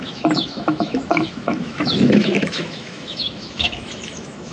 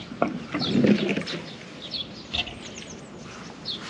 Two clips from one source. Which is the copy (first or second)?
first